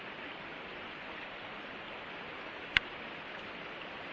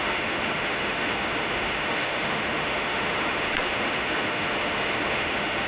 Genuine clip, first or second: first